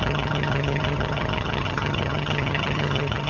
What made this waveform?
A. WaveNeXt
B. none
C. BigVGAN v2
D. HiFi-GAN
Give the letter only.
D